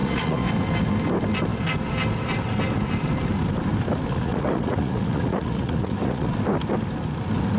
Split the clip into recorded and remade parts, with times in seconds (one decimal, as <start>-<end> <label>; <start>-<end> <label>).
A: 0.0-0.5 remade; 0.5-4.1 recorded; 4.1-6.3 remade; 6.3-7.6 recorded